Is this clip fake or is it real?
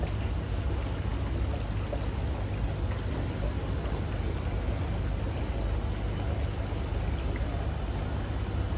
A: real